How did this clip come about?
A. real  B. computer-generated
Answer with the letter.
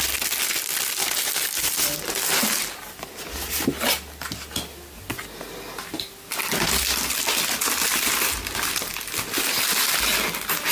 A